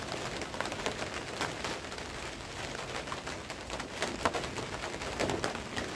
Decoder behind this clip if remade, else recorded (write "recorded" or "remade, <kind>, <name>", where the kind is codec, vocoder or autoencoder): recorded